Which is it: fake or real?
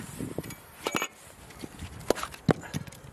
real